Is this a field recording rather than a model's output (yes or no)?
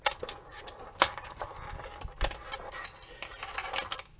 yes